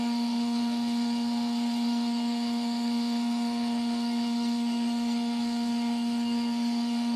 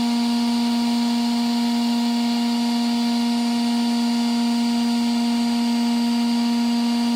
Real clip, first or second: second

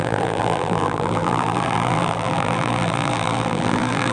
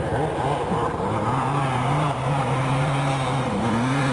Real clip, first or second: second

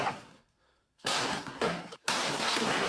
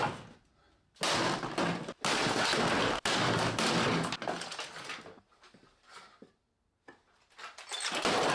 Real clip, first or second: second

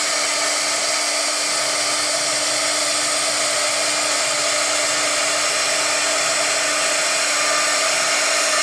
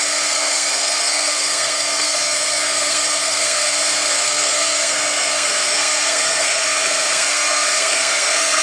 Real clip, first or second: first